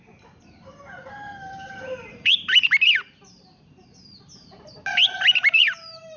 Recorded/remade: remade